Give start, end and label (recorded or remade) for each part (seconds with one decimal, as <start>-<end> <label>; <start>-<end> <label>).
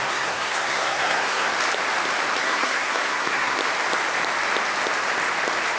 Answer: 0.0-1.5 remade; 1.5-2.4 recorded; 2.4-3.6 remade; 3.6-5.8 recorded